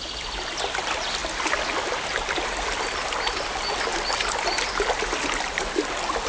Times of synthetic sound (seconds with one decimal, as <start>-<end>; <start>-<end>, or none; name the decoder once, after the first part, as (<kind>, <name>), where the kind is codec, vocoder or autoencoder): none